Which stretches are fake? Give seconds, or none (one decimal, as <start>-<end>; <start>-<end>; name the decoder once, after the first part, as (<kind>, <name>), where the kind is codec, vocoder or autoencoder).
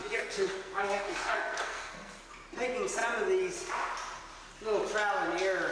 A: 0.0-2.3 (codec, SNAC)